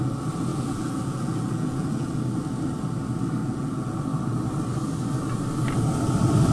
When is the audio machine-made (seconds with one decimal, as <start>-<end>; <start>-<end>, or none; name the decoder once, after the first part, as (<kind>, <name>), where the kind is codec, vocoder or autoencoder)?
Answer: 0.5-2.2 (vocoder, Vocos); 3.4-3.9